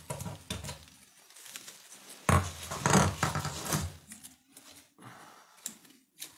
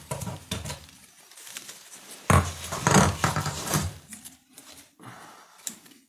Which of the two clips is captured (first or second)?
first